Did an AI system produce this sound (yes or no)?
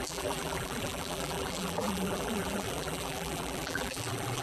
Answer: yes